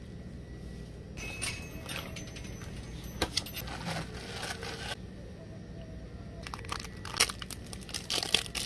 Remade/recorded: recorded